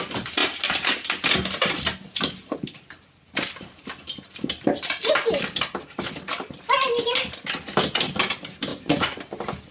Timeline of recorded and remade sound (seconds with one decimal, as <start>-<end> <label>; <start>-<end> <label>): 0.0-8.7 recorded; 8.7-9.2 remade; 9.2-9.7 recorded